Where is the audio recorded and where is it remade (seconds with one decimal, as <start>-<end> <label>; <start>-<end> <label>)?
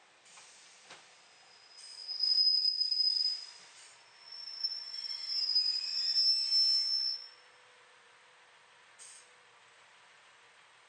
0.0-10.9 recorded